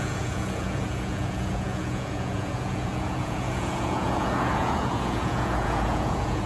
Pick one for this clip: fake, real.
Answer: fake